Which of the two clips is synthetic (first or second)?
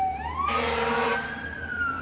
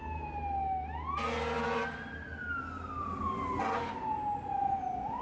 first